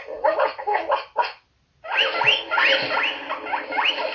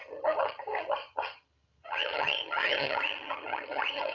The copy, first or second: second